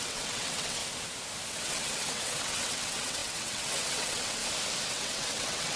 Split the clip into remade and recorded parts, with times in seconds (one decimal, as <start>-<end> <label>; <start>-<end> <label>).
0.0-0.8 remade; 0.8-1.5 recorded; 1.5-4.4 remade; 4.4-4.9 recorded; 4.9-5.8 remade